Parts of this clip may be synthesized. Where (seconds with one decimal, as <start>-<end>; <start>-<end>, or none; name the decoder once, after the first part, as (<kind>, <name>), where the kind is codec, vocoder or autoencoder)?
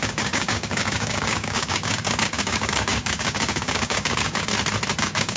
0.0-4.5 (codec, DAC); 5.0-5.4